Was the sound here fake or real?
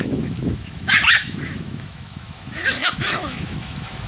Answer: fake